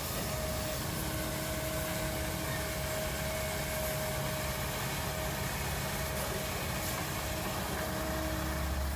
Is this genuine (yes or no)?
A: yes